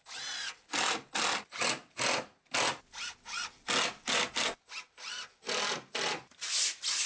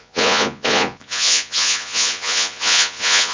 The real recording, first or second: first